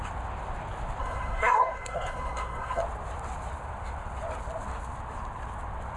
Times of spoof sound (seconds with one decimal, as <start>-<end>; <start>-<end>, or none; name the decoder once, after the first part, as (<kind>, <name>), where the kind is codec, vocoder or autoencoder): 1.0-2.8 (codec, SNAC)